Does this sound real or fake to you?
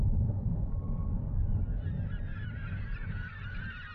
fake